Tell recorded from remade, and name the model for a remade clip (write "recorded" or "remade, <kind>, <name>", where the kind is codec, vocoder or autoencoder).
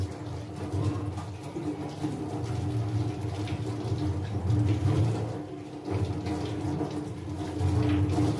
recorded